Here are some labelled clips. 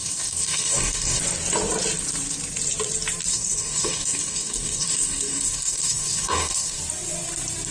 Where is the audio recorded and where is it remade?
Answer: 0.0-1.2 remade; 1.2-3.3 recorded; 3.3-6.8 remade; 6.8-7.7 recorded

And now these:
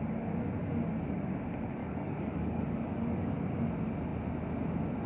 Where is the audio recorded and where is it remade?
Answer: 0.0-1.8 recorded; 1.8-3.4 remade; 3.4-5.1 recorded

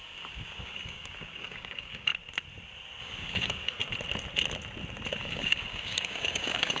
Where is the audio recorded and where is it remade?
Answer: 0.0-2.1 remade; 2.1-3.0 recorded; 3.0-3.8 remade; 3.8-5.2 recorded; 5.2-6.8 remade